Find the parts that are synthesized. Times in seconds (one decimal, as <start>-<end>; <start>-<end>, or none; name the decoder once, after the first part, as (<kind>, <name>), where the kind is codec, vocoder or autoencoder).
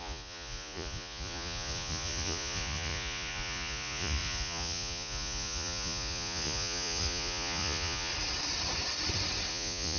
0.0-8.1 (vocoder, Vocos); 9.5-10.0